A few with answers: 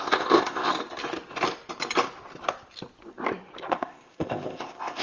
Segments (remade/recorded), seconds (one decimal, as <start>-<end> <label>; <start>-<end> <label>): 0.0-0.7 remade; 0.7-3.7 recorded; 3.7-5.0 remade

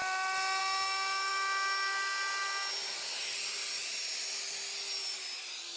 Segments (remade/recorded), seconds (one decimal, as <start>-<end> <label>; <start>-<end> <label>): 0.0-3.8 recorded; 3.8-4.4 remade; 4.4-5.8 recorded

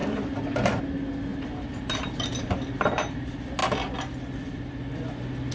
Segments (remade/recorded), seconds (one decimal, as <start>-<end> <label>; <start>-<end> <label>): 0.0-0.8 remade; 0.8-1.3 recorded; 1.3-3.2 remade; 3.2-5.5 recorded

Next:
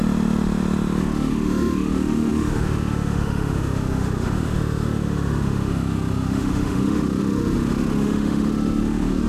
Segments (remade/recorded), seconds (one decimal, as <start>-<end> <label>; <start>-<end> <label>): 0.0-1.0 recorded; 1.0-9.3 remade